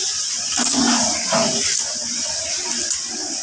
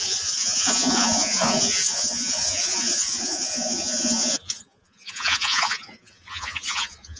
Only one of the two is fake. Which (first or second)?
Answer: second